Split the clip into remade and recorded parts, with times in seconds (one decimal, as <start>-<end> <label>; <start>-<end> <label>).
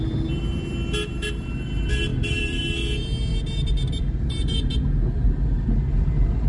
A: 0.0-2.1 recorded; 2.1-2.6 remade; 2.6-3.3 recorded; 3.3-4.8 remade; 4.8-6.5 recorded